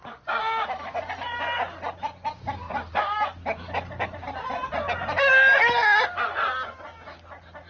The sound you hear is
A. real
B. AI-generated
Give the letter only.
A